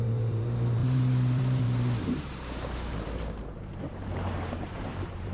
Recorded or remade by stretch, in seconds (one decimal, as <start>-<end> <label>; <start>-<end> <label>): 0.0-5.3 remade